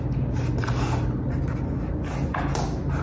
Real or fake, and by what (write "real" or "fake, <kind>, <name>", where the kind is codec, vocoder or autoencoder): real